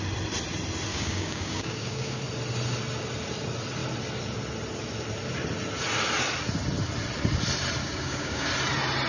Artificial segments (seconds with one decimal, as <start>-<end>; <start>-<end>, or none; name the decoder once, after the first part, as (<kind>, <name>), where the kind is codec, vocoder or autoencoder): 0.9-2.2 (codec, DAC); 7.8-8.5

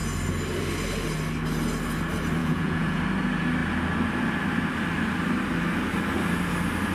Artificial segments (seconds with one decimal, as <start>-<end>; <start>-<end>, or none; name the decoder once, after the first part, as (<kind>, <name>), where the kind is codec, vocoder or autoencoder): 2.4-3.0 (vocoder, Vocos)

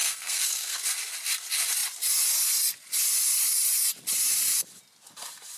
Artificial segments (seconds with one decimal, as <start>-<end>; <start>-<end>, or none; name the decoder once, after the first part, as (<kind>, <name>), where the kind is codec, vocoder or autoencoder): 0.0-0.8 (codec, SNAC)

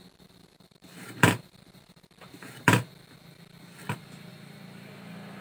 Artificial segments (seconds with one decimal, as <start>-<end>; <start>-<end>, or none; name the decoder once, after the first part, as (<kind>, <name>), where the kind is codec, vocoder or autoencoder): 0.4-2.9 (vocoder, BigVGAN v2); 4.3-4.9

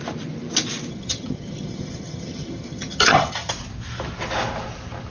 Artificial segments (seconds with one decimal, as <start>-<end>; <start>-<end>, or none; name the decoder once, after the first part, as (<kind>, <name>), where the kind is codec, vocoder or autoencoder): 0.9-3.5 (vocoder, HiFi-GAN)

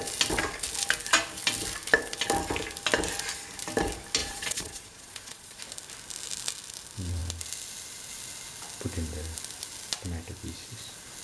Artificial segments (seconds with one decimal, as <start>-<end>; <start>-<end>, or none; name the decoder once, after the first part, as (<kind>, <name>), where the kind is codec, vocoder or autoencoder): 4.2-5.6 (vocoder, Vocos)

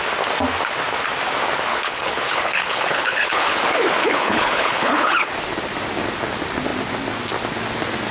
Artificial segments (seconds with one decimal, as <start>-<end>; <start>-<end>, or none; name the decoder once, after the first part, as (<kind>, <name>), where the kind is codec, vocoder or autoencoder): 1.7-3.6 (codec, HILCodec); 4.0-5.3